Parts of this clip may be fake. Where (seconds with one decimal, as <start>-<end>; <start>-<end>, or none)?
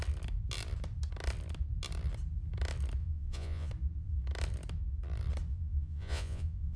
3.0-3.7; 5.5-6.8